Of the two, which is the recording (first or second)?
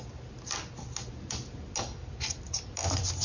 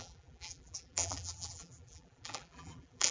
first